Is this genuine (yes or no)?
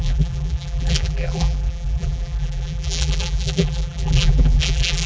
no